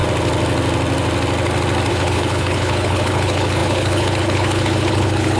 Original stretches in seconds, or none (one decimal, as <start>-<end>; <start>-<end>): 0.0-1.9